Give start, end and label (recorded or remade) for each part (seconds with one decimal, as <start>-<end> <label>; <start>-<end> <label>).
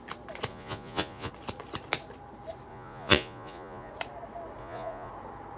0.0-0.5 recorded; 0.5-1.3 remade; 1.3-2.7 recorded; 2.7-3.9 remade; 3.9-4.6 recorded; 4.6-5.1 remade; 5.1-5.6 recorded